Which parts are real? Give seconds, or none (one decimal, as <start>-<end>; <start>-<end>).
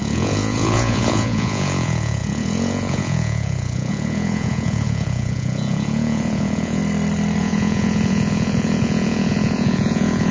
6.8-7.4